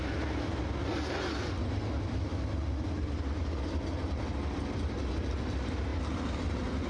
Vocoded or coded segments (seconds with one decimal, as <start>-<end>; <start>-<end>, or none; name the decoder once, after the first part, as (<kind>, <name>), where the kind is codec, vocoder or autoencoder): none